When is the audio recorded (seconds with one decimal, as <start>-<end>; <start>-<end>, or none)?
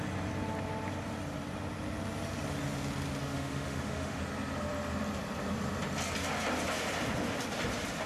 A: 0.0-3.2; 4.2-8.1